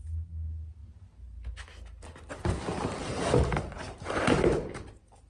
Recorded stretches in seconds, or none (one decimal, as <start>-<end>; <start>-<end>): 0.0-2.7; 4.8-5.3